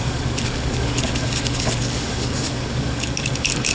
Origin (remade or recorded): remade